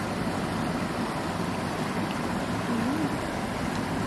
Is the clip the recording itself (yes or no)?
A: yes